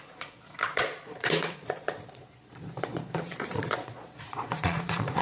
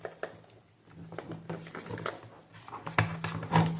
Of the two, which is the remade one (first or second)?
first